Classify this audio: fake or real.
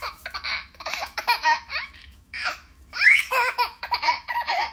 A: fake